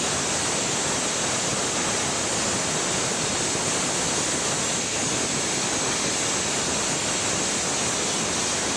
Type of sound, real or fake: real